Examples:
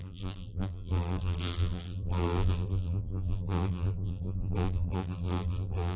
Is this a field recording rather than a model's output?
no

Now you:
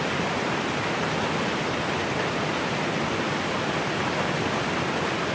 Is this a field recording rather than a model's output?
no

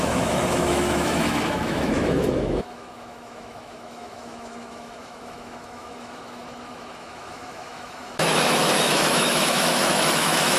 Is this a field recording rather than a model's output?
no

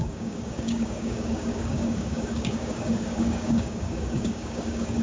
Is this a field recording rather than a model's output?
no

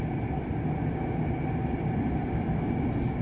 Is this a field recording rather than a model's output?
yes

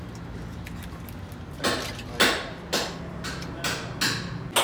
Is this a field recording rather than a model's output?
yes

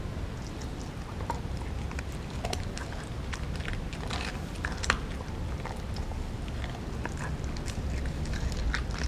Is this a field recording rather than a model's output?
yes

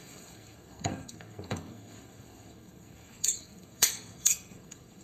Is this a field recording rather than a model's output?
no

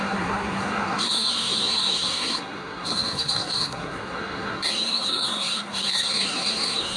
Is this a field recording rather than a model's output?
no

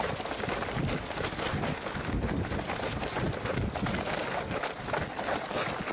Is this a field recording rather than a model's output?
yes